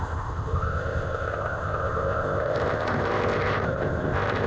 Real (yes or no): no